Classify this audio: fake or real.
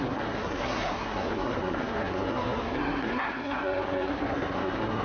fake